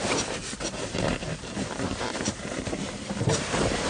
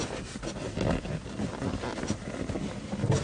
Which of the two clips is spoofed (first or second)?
first